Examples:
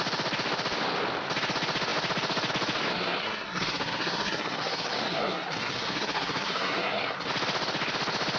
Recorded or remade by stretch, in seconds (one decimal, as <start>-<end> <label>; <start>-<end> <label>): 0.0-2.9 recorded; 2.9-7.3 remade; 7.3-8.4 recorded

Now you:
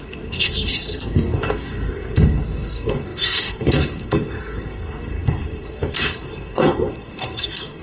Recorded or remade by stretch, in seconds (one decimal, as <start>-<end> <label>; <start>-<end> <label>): 0.0-7.8 remade

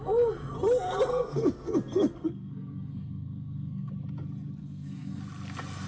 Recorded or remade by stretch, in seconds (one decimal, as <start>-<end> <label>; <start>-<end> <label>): 0.0-1.1 recorded; 1.1-3.9 remade; 3.9-4.6 recorded; 4.6-5.2 remade; 5.2-5.9 recorded